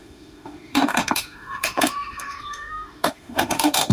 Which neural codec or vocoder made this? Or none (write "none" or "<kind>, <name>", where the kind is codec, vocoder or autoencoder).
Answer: autoencoder, DAC-VAE